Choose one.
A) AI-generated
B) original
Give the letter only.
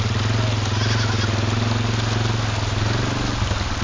B